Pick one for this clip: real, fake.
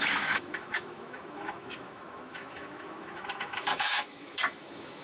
fake